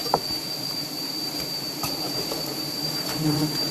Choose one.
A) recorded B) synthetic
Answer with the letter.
B